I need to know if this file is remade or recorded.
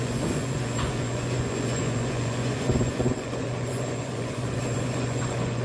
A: remade